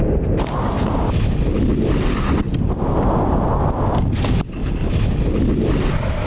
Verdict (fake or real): real